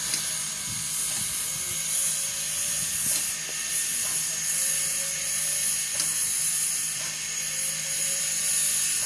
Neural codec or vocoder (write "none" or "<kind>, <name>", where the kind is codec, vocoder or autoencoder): none